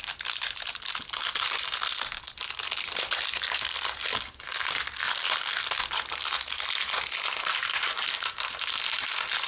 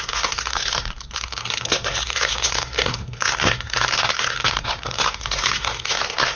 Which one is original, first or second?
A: first